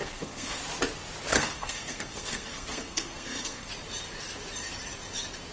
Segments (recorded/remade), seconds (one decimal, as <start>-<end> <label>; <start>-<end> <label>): 0.0-0.6 remade; 0.6-1.3 recorded; 1.3-3.7 remade; 3.7-5.5 recorded